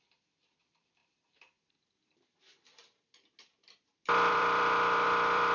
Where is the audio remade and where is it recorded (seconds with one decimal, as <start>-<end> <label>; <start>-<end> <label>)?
0.0-1.0 remade; 1.0-4.3 recorded; 4.3-5.5 remade